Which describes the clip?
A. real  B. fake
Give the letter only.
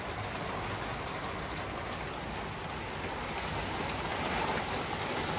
A